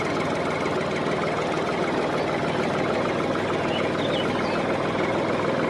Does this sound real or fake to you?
real